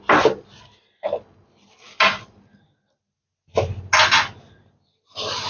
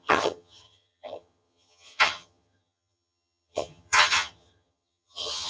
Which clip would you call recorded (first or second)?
first